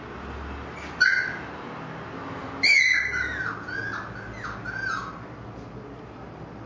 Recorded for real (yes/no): yes